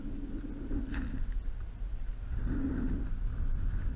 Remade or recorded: recorded